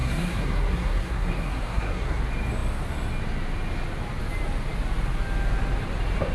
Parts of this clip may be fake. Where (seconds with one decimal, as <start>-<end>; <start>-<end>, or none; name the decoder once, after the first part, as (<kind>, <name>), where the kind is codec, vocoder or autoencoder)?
0.0-2.2 (codec, SNAC)